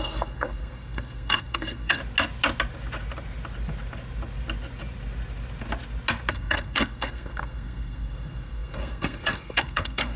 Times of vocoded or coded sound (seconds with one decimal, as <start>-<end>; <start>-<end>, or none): 0.0-2.0; 6.3-10.2